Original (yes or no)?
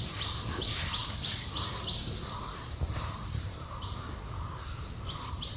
no